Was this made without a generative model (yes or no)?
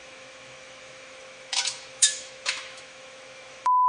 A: no